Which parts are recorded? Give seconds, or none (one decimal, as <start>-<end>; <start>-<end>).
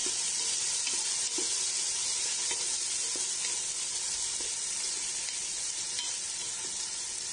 0.0-7.3